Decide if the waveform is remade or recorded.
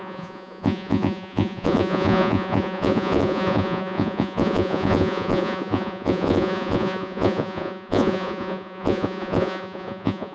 remade